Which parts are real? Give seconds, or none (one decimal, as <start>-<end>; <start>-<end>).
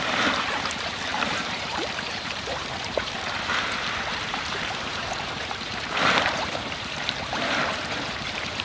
none